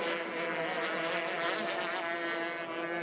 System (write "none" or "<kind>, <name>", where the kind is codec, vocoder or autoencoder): none